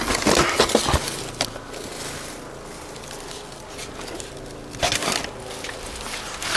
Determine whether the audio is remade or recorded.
recorded